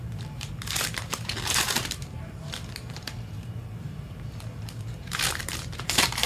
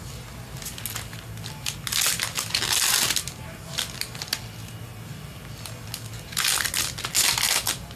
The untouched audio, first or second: second